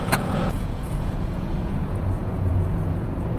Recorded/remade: remade